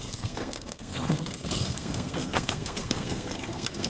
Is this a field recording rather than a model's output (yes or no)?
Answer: no